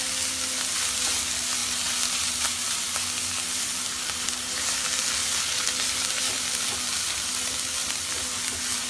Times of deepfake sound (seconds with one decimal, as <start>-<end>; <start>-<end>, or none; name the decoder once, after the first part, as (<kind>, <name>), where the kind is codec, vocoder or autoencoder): none